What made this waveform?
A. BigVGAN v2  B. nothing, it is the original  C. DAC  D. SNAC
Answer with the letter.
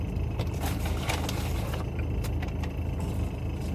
B